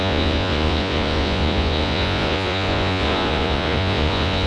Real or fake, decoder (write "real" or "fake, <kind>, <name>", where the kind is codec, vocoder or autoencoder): fake, vocoder, Vocos